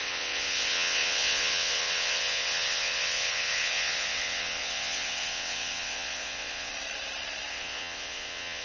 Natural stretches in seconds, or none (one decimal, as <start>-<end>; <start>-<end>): 6.7-7.5